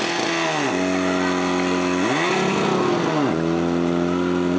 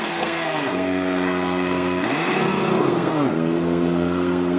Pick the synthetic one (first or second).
second